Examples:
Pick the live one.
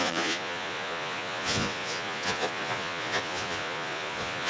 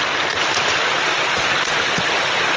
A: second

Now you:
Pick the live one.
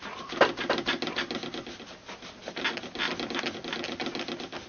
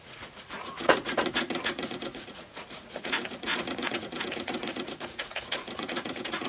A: first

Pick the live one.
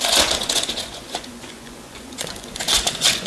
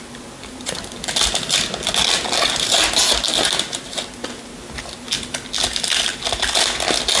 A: second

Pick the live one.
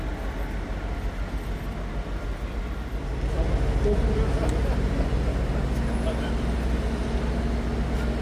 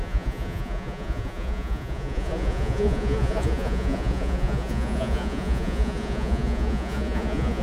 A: first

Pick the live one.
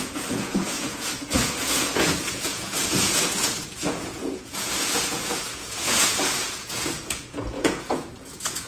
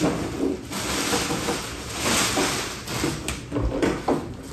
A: second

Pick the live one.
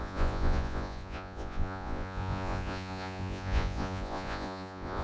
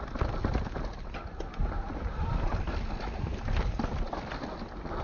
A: second